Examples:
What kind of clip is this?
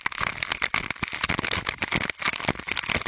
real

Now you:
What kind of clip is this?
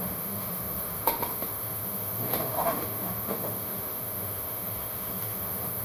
fake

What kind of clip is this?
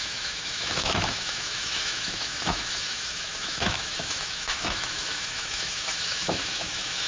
fake